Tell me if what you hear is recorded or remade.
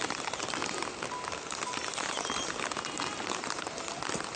recorded